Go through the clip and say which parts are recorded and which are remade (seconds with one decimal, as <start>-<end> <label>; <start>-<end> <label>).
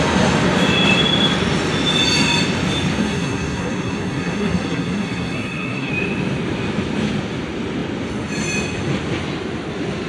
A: 0.0-3.0 recorded; 3.0-5.9 remade; 5.9-10.1 recorded